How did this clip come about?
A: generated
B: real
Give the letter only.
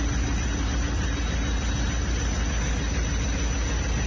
B